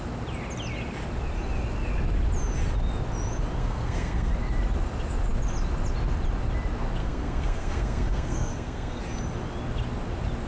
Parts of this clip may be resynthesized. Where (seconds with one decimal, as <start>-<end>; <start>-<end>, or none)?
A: 3.6-4.3; 7.0-9.0